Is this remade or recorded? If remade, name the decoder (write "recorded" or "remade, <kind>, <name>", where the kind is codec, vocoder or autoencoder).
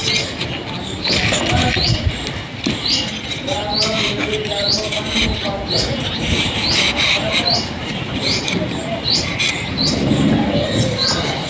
recorded